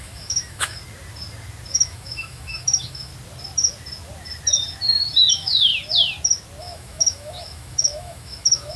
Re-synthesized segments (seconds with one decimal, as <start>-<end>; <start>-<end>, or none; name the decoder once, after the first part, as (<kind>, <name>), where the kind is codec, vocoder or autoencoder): 0.0-0.8 (autoencoder, DAC-VAE); 1.7-3.1; 5.3-5.7; 6.6-8.8